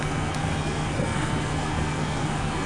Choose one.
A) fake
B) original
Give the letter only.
A